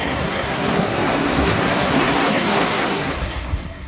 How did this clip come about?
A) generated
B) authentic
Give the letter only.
A